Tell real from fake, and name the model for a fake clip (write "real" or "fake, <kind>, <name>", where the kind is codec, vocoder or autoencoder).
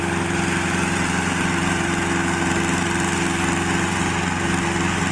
real